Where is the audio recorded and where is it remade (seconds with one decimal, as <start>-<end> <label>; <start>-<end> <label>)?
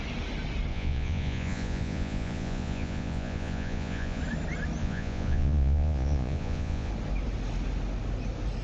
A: 0.0-0.7 recorded; 0.7-4.2 remade; 4.2-4.8 recorded; 4.8-6.9 remade; 6.9-8.6 recorded